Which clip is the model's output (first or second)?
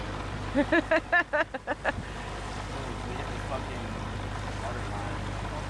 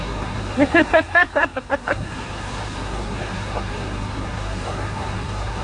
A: second